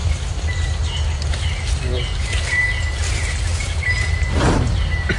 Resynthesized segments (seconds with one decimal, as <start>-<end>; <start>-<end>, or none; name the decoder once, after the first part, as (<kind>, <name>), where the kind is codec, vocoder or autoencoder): none